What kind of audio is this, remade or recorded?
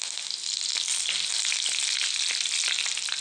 recorded